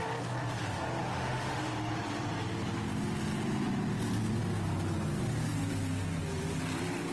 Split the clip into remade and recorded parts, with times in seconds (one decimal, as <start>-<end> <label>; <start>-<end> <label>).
0.0-1.0 recorded; 1.0-1.6 remade; 1.6-7.1 recorded